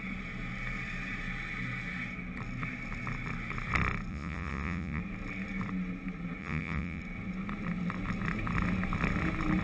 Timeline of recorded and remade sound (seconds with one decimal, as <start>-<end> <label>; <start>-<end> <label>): 0.0-4.1 recorded; 4.1-5.0 remade; 5.0-6.4 recorded; 6.4-7.0 remade; 7.0-9.6 recorded